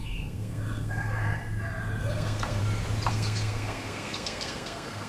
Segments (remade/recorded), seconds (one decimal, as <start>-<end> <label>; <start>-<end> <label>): 0.0-1.4 remade; 1.4-2.0 recorded; 2.0-2.6 remade; 2.6-3.1 recorded; 3.1-5.1 remade